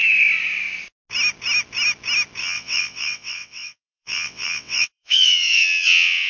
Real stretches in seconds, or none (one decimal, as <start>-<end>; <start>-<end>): 0.0-2.4